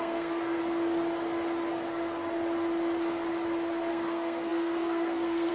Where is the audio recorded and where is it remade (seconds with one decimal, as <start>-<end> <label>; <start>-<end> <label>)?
0.0-0.6 remade; 0.6-3.9 recorded; 3.9-5.5 remade